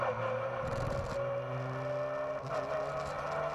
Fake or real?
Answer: real